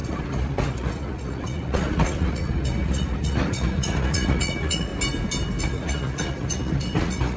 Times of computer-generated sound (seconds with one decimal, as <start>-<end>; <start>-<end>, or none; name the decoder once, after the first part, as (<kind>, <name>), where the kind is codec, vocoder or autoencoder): 0.0-4.9 (vocoder, Vocos); 5.6-7.4